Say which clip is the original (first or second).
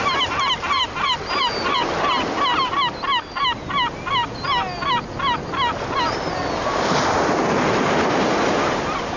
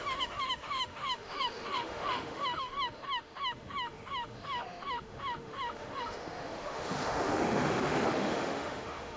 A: first